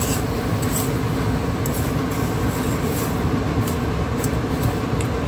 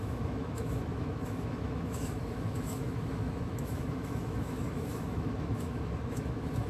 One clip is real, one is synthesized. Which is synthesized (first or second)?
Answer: second